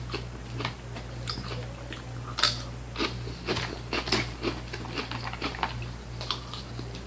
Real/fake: real